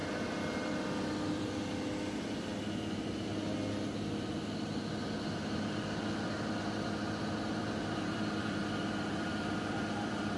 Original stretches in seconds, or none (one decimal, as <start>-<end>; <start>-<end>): 0.0-1.3; 2.5-7.5